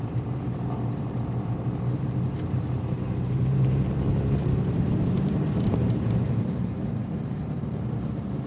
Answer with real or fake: fake